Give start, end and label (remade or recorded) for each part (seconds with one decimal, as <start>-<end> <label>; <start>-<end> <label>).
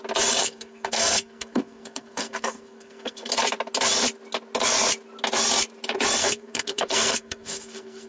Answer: 0.0-0.4 recorded; 0.4-3.3 remade; 3.3-6.2 recorded; 6.2-8.1 remade